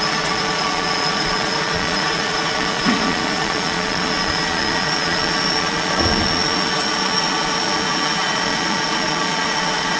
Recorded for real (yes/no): no